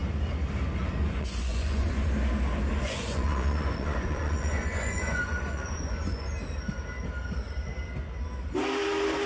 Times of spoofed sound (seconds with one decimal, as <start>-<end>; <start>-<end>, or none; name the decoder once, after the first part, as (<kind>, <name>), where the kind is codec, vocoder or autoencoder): 1.0-2.1 (vocoder, Vocos); 2.8-6.3